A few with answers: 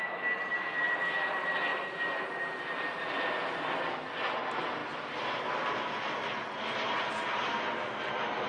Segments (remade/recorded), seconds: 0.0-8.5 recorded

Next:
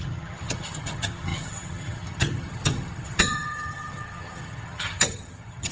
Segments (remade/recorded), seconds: 0.0-5.7 remade